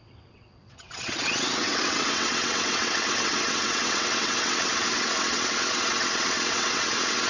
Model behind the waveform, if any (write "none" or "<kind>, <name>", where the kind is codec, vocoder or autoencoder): vocoder, WaveNeXt